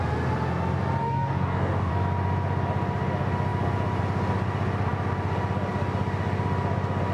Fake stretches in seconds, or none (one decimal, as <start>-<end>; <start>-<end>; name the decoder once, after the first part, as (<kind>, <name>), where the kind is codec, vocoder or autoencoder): 1.0-1.9 (codec, DAC)